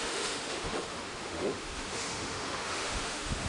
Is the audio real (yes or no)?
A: no